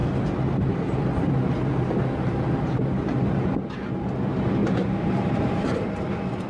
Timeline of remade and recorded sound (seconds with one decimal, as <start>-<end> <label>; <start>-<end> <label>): 0.0-4.6 recorded; 4.6-5.7 remade; 5.7-6.5 recorded